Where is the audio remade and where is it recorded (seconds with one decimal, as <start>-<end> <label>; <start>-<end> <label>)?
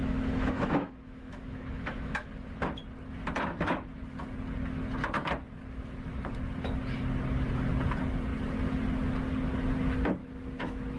0.0-2.3 remade; 2.3-10.2 recorded; 10.2-11.0 remade